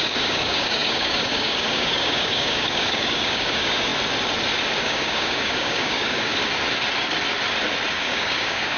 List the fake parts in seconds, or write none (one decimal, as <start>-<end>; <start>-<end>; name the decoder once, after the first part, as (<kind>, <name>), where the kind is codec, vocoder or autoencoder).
0.0-3.9 (codec, DAC); 4.8-6.3; 7.9-8.8